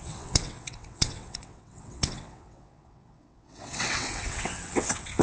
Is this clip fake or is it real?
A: fake